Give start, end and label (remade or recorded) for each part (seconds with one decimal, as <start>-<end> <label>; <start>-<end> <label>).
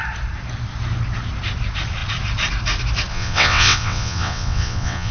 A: 0.0-3.1 recorded; 3.1-5.1 remade